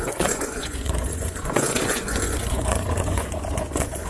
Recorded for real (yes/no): no